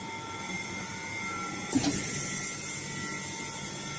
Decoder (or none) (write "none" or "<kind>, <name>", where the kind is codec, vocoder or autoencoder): none